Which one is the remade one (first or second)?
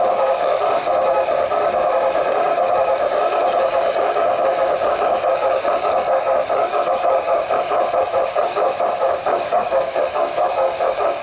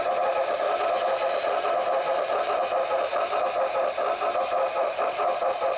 first